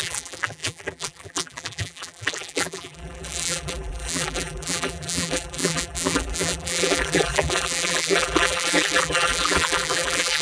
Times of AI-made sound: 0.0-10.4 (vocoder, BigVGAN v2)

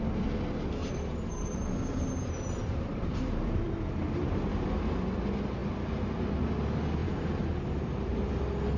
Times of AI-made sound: 0.8-4.5 (vocoder, BigVGAN v2); 7.0-8.3

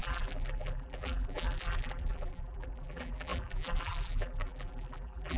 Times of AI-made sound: 0.0-5.4 (vocoder, BigVGAN v2)

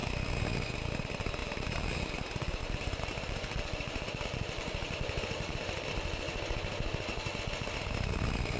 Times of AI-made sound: 1.4-2.1 (vocoder, BigVGAN v2); 2.6-6.3

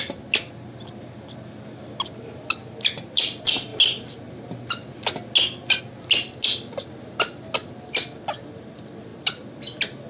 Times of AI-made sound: none

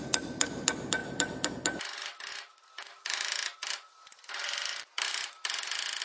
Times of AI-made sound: 1.0-1.5 (vocoder, BigVGAN v2)

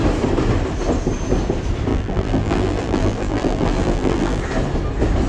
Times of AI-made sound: 1.9-4.4 (vocoder, BigVGAN v2)